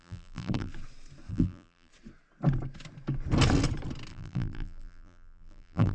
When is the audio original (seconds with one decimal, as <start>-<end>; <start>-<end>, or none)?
0.7-1.3; 1.9-4.1

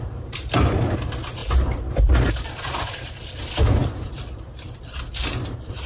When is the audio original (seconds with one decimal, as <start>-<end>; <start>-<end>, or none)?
none

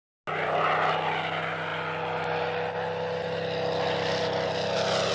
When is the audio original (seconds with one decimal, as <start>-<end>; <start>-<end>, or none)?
0.0-5.1

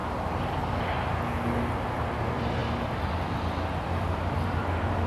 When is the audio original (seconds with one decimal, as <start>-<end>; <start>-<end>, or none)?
0.0-2.6; 3.3-5.1

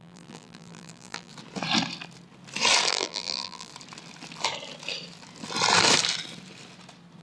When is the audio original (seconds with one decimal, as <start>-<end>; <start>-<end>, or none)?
1.3-2.9; 3.7-7.2